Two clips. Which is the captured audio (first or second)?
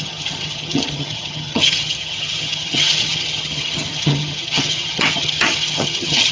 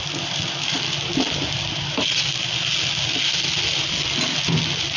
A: second